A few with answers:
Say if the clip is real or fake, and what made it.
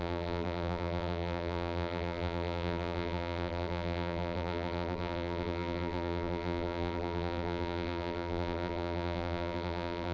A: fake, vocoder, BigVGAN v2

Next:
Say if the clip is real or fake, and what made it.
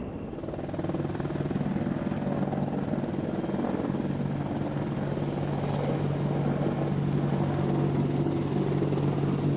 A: real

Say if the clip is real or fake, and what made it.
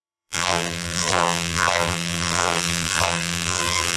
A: fake, vocoder, BigVGAN v2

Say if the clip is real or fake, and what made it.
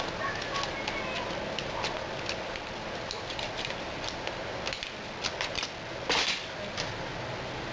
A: real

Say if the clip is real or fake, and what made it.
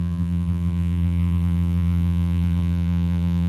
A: fake, vocoder, BigVGAN v2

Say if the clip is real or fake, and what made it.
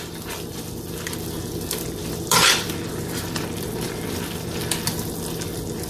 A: fake, vocoder, BigVGAN v2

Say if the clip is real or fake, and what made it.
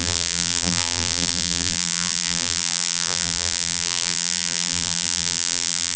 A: fake, vocoder, BigVGAN v2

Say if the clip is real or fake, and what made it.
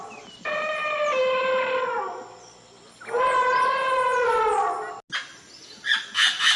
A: real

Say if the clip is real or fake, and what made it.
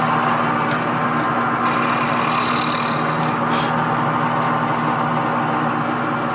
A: real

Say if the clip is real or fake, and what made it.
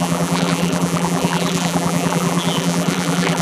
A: fake, vocoder, BigVGAN v2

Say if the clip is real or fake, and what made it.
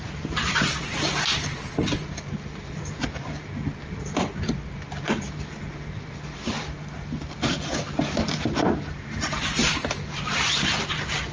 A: fake, vocoder, BigVGAN v2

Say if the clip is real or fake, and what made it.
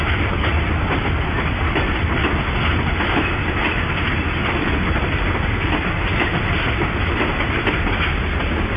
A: real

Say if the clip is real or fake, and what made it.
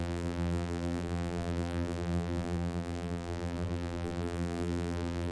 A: fake, vocoder, BigVGAN v2